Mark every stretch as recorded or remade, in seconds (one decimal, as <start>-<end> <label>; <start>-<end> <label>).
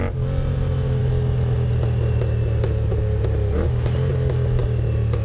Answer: 0.0-5.2 recorded